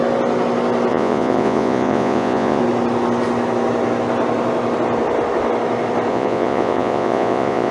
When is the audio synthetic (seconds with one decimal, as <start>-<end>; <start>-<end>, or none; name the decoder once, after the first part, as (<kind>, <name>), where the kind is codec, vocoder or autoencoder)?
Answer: 0.9-2.6 (vocoder, Vocos); 6.1-7.7